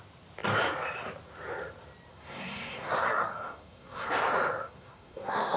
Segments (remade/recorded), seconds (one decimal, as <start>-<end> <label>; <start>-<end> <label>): 0.0-2.1 recorded; 2.1-4.1 remade; 4.1-4.6 recorded; 4.6-5.6 remade

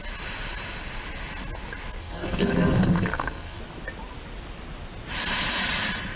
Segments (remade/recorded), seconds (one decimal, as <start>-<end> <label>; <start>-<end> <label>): 0.0-2.0 recorded; 2.0-3.6 remade; 3.6-6.2 recorded

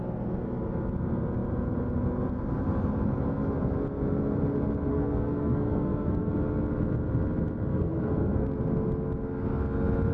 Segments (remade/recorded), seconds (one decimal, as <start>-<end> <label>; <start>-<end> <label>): 0.0-4.9 recorded; 4.9-6.3 remade; 6.3-7.7 recorded; 7.7-8.6 remade; 8.6-10.1 recorded

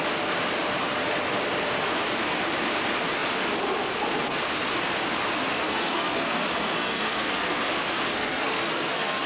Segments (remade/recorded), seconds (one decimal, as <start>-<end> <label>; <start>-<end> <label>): 0.0-5.5 recorded; 5.5-7.6 remade; 7.6-8.1 recorded; 8.1-9.3 remade

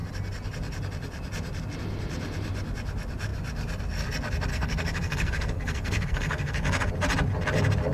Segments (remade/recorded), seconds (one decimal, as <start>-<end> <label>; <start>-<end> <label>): 0.0-4.5 recorded; 4.5-6.9 remade; 6.9-7.9 recorded